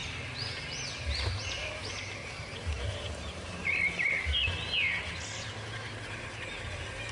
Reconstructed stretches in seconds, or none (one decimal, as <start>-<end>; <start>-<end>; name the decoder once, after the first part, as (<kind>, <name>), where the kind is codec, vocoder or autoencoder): 1.6-4.5 (vocoder, BigVGAN v2)